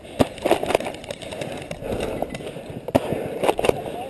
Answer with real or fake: real